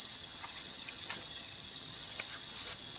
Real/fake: fake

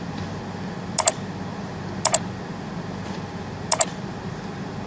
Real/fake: real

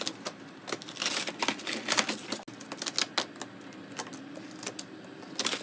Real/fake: real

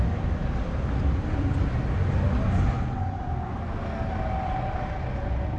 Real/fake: real